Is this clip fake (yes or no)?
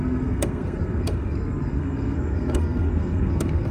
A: yes